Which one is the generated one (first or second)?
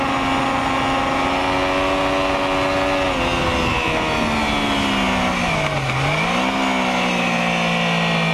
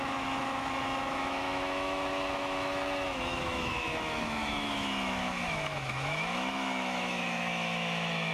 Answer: second